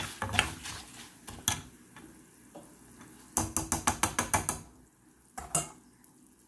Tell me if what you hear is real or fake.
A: real